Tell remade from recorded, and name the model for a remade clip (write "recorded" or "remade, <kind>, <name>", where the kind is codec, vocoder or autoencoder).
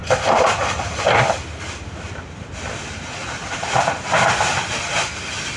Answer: recorded